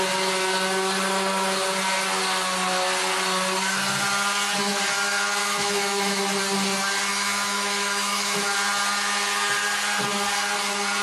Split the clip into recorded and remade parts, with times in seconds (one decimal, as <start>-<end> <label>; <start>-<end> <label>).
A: 0.0-5.4 recorded; 5.4-6.2 remade; 6.2-7.1 recorded; 7.1-8.5 remade; 8.5-11.0 recorded